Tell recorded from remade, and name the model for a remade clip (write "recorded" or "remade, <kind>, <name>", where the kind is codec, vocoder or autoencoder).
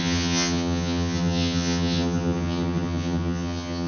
remade, vocoder, HiFi-GAN